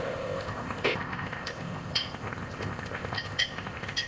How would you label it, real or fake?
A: fake